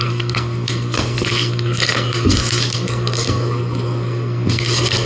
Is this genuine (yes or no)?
no